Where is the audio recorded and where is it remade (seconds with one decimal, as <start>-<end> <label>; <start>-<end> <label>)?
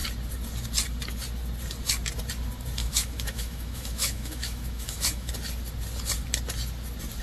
0.0-2.8 recorded; 2.8-5.3 remade; 5.3-7.2 recorded